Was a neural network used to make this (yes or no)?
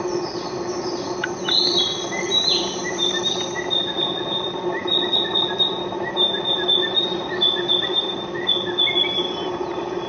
no